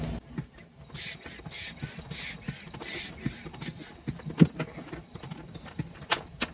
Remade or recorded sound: recorded